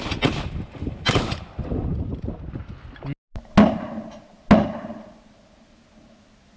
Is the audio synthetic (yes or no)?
no